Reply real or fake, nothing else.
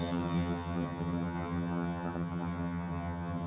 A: fake